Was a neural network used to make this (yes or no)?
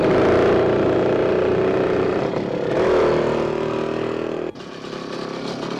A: no